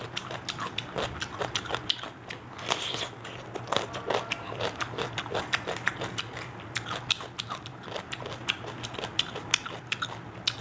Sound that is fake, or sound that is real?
real